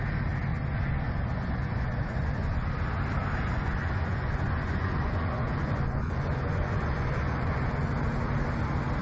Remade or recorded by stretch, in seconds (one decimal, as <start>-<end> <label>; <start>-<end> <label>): 0.0-0.5 recorded; 0.5-2.7 remade; 2.7-3.4 recorded; 3.4-7.9 remade; 7.9-9.0 recorded